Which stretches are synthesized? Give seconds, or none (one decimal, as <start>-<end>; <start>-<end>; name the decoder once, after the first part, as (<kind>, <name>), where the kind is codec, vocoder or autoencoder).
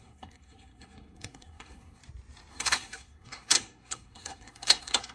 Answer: 0.0-2.0 (codec, SNAC); 2.5-5.1